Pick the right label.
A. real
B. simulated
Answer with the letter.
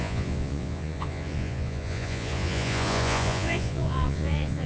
B